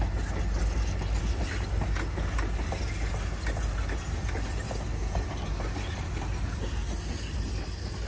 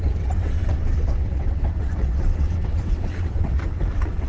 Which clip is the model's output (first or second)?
second